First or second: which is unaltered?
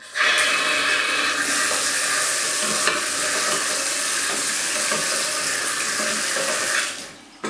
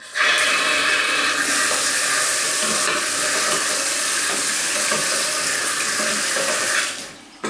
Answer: first